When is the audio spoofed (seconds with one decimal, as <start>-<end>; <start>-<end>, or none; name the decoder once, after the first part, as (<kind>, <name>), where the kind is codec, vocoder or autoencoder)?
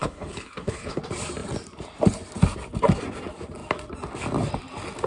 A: 0.0-1.0 (codec, HILCodec)